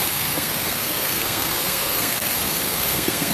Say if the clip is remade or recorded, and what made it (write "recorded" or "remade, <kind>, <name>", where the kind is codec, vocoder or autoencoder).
remade, codec, SNAC